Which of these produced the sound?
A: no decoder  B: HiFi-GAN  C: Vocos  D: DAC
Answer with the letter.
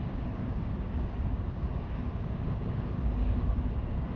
D